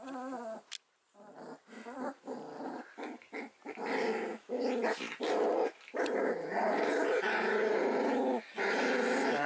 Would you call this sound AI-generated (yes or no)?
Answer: no